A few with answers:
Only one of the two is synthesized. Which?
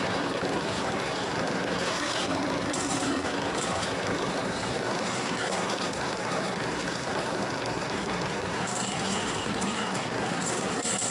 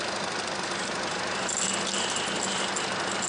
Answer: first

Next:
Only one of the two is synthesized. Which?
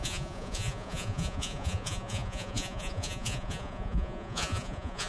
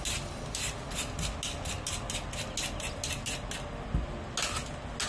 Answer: first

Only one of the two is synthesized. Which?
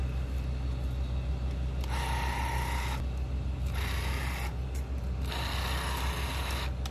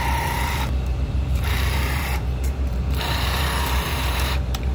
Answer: second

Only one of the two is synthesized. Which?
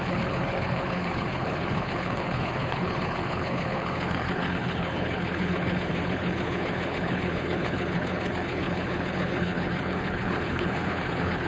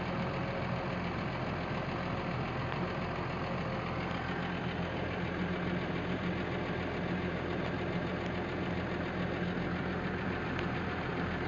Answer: first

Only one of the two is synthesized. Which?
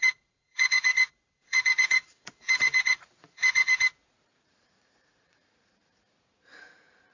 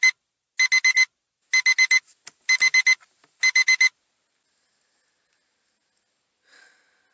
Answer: first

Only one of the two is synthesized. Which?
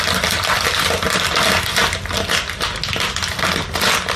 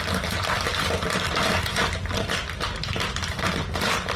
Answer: second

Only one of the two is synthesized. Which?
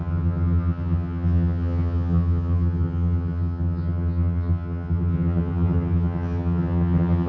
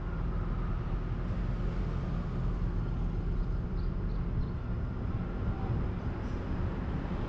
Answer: first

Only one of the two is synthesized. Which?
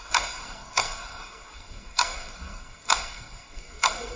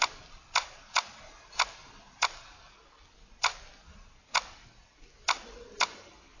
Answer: first